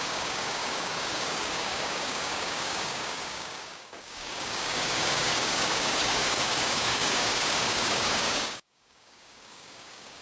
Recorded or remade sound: remade